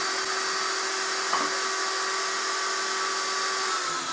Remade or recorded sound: recorded